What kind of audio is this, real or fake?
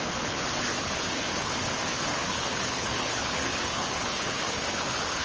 fake